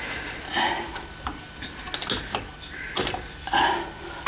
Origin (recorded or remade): recorded